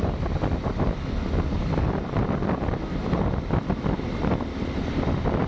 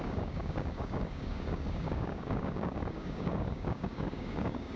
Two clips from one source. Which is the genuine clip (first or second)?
first